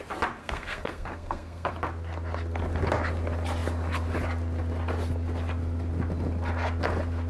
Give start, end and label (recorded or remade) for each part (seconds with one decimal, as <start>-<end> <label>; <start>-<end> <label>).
0.0-0.4 recorded; 0.4-1.7 remade; 1.7-7.3 recorded